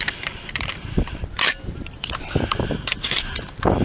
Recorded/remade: remade